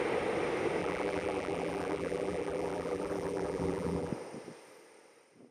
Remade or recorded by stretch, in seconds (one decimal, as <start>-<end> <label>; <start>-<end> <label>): 0.0-0.8 recorded; 0.8-4.1 remade; 4.1-5.5 recorded